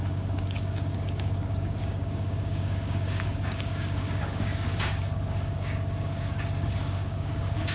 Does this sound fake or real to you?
fake